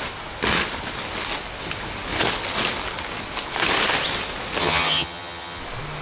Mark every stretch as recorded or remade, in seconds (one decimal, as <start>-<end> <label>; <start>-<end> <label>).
0.0-4.6 recorded; 4.6-5.6 remade; 5.6-6.0 recorded